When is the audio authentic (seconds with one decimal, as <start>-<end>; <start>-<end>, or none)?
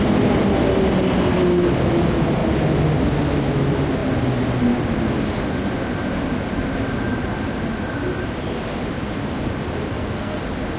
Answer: 0.0-9.9; 10.4-10.8